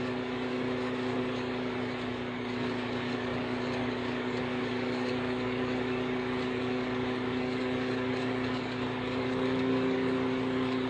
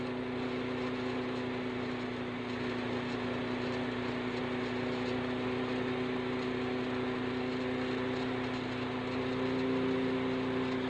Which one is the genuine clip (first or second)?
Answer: second